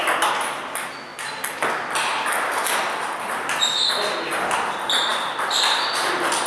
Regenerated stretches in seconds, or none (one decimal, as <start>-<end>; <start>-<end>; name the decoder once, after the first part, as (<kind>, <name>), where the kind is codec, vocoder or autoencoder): none